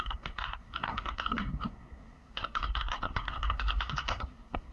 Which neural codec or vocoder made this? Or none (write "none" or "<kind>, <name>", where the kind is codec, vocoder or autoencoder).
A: codec, SNAC